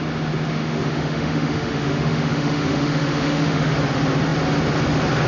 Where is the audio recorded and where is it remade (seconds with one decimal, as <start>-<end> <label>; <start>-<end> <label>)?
0.0-0.5 recorded; 0.5-3.7 remade; 3.7-5.3 recorded